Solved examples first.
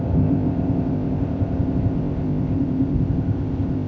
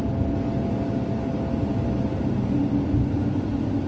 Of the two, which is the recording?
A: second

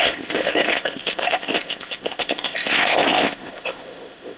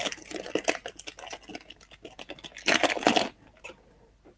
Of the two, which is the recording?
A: second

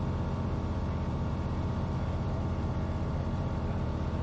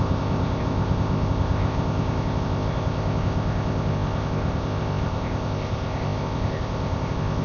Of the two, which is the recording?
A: first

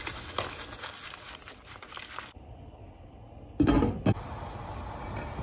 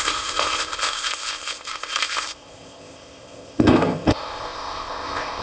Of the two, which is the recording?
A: first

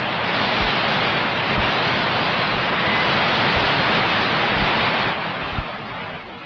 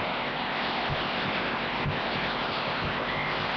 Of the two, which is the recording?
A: first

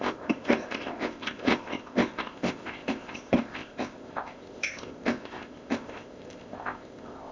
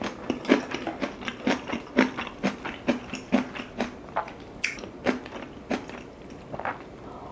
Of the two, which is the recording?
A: second